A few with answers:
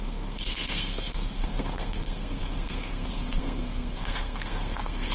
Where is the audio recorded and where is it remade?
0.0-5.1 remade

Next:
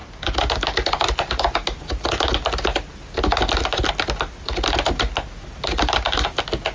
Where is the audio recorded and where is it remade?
0.0-6.7 recorded

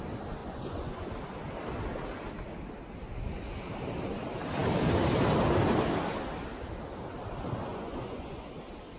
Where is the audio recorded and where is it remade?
0.0-0.4 recorded; 0.4-1.1 remade; 1.1-7.7 recorded; 7.7-8.5 remade; 8.5-9.0 recorded

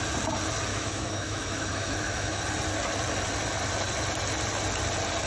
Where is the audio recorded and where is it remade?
0.0-0.7 recorded; 0.7-2.4 remade; 2.4-5.3 recorded

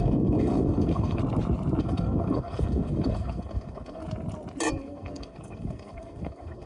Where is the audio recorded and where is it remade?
0.0-1.2 remade; 1.2-1.8 recorded; 1.8-4.0 remade; 4.0-4.7 recorded; 4.7-6.7 remade

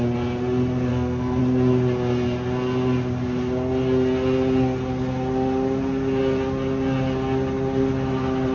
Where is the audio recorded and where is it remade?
0.0-0.9 recorded; 0.9-1.4 remade; 1.4-8.5 recorded

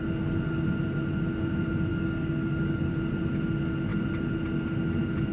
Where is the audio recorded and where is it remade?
0.0-1.9 recorded; 1.9-2.9 remade; 2.9-5.3 recorded